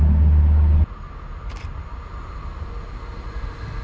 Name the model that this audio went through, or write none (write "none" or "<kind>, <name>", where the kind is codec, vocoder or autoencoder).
none